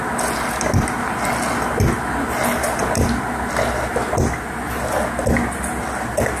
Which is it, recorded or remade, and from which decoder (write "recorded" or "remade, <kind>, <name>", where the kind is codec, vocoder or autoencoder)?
recorded